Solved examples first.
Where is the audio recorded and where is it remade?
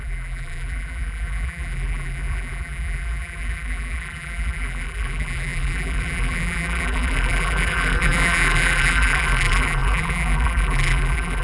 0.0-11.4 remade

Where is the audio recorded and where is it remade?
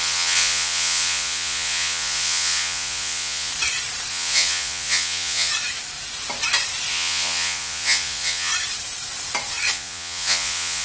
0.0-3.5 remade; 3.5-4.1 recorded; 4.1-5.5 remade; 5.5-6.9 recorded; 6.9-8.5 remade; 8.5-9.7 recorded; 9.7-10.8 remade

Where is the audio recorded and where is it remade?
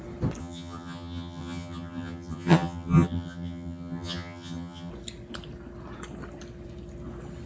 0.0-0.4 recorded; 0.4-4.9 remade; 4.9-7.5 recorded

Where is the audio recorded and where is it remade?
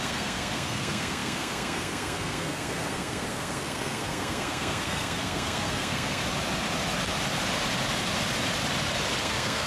0.0-6.2 remade; 6.2-9.2 recorded; 9.2-9.7 remade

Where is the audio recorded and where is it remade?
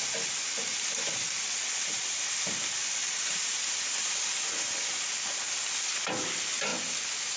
0.0-7.4 recorded